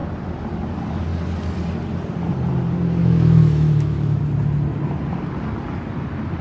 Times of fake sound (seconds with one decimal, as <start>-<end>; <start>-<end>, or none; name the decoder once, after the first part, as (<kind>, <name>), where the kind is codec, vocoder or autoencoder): 3.0-4.2 (autoencoder, DAC-VAE)